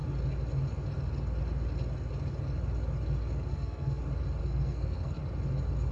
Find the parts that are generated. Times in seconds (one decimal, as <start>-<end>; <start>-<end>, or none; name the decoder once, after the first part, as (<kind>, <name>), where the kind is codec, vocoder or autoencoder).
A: 3.5-4.0 (codec, SNAC); 4.4-5.2